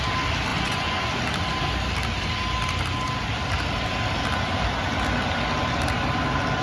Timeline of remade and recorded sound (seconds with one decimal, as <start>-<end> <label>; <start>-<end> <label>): 0.0-0.5 recorded; 0.5-1.2 remade; 1.2-6.6 recorded